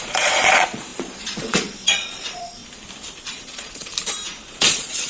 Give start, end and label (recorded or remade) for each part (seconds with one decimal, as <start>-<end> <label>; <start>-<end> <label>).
0.0-2.6 remade; 2.6-3.3 recorded; 3.3-3.9 remade; 3.9-4.6 recorded; 4.6-5.1 remade